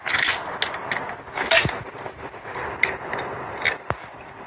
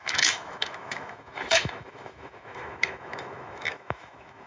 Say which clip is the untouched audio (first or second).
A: first